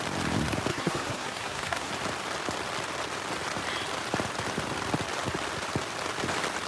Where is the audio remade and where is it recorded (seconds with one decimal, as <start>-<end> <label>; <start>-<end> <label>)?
0.0-0.7 recorded; 0.7-1.9 remade; 1.9-6.7 recorded